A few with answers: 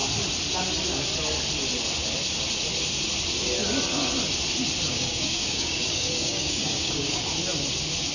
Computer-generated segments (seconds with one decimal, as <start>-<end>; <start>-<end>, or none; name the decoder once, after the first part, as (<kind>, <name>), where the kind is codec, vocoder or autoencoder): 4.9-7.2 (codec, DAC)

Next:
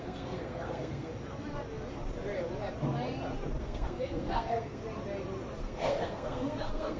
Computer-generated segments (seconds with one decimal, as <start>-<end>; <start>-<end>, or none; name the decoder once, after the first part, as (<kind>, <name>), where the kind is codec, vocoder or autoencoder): 0.0-1.1 (codec, SNAC); 3.6-4.8; 5.6-7.0

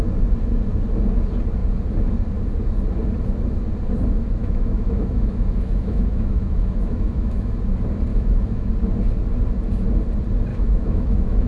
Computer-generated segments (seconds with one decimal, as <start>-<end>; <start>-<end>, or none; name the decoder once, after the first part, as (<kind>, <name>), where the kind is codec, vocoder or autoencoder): 4.4-7.5 (autoencoder, DAC-VAE); 8.1-8.7; 10.5-11.5